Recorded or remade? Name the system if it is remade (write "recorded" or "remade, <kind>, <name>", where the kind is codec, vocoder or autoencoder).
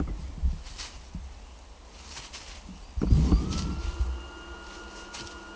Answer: recorded